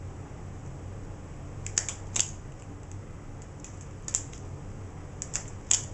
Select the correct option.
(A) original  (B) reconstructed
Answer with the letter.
A